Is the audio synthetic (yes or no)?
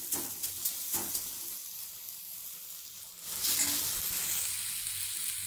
no